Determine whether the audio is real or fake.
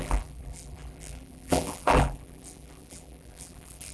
fake